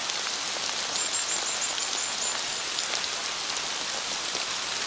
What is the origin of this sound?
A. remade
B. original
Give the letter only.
B